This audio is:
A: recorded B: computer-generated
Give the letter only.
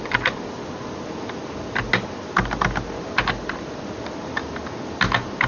A